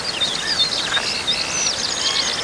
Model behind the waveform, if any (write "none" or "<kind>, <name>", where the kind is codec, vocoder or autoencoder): none